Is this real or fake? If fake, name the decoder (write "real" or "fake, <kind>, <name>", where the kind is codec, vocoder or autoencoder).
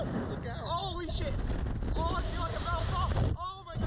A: real